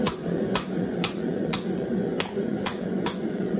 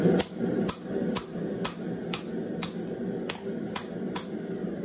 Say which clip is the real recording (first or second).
second